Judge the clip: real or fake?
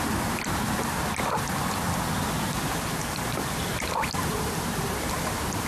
real